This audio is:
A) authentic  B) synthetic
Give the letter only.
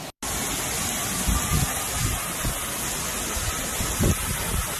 A